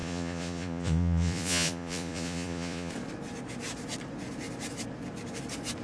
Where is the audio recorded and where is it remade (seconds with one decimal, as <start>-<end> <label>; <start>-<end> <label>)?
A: 0.0-2.9 remade; 2.9-5.8 recorded